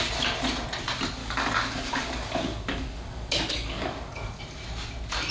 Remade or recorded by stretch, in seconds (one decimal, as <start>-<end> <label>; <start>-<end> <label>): 0.0-1.2 recorded; 1.2-4.4 remade; 4.4-5.3 recorded